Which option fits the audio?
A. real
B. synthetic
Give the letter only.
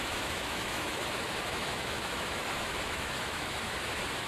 B